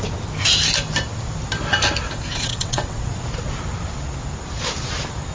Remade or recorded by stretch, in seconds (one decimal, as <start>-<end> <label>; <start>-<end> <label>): 0.0-2.3 recorded; 2.3-3.1 remade; 3.1-5.3 recorded